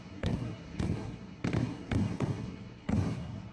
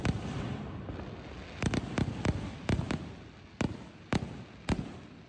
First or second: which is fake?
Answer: first